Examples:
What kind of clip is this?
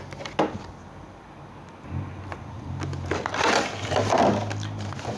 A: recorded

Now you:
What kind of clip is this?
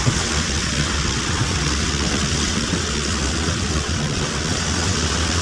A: remade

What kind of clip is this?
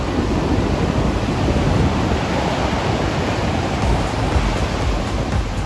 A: recorded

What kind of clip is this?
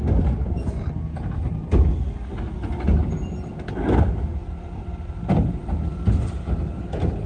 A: recorded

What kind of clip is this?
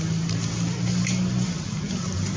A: recorded